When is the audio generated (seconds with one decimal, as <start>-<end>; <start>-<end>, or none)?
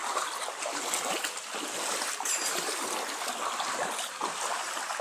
none